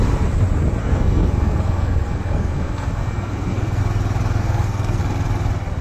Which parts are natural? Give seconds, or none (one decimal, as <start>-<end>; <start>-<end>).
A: 0.0-0.8; 3.8-4.4; 5.0-5.8